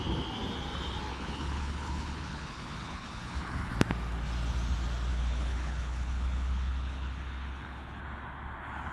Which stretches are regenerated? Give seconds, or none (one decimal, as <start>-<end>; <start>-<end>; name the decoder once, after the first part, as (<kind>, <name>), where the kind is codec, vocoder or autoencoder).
1.1-3.7 (codec, HILCodec); 5.1-8.0